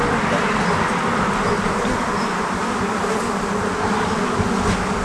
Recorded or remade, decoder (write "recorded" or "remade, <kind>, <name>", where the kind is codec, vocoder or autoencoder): recorded